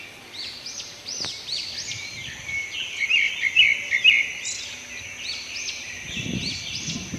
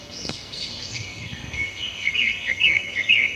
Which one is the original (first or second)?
first